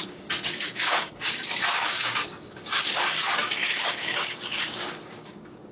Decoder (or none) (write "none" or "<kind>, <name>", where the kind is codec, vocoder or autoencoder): codec, DAC